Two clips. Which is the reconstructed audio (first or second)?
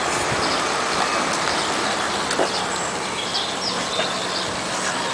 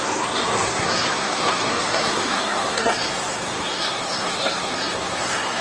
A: second